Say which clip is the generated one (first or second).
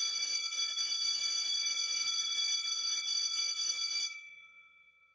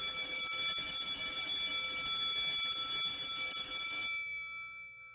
first